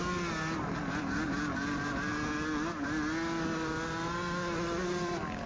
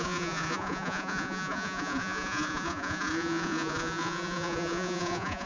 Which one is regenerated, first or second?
second